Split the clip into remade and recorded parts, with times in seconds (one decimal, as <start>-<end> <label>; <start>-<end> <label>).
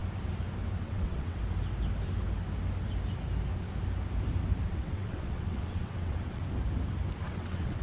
0.0-0.8 recorded; 0.8-1.4 remade; 1.4-4.7 recorded; 4.7-6.4 remade; 6.4-7.3 recorded; 7.3-7.8 remade